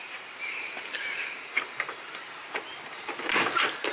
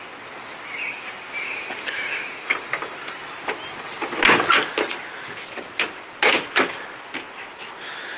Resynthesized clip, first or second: first